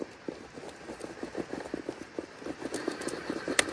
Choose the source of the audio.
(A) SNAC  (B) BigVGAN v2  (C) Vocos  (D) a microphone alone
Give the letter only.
D